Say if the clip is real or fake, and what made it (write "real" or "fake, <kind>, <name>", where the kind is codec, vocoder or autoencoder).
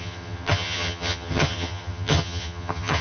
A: fake, vocoder, HiFi-GAN